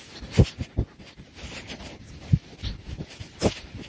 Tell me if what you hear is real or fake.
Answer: real